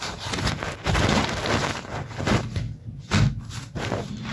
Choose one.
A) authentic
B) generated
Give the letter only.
A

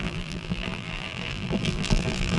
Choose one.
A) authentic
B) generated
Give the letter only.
B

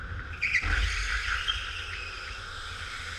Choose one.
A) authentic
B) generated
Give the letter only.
A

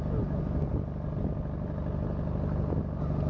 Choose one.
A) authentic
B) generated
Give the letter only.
A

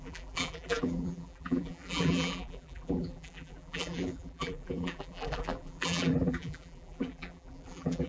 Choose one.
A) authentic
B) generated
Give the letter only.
B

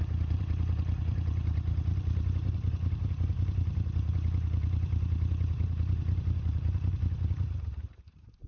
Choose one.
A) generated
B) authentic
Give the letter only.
A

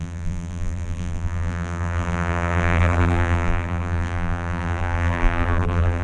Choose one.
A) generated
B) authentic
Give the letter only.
A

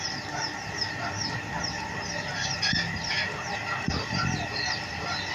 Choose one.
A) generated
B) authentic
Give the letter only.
B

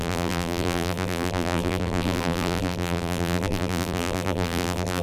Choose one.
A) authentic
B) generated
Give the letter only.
B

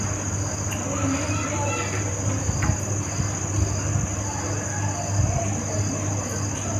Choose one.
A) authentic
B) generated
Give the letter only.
A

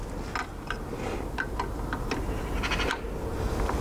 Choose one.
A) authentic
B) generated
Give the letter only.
A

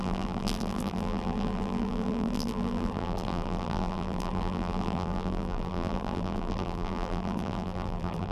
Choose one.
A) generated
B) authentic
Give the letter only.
A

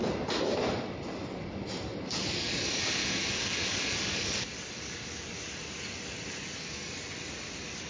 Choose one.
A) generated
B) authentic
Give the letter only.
A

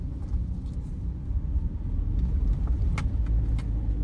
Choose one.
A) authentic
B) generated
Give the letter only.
A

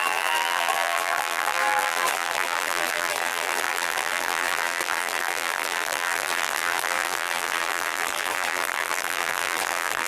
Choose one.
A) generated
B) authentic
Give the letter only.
A